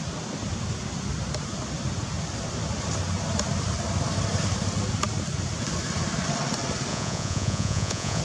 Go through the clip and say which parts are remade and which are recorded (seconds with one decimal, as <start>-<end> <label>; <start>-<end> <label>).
0.0-6.9 recorded; 6.9-8.2 remade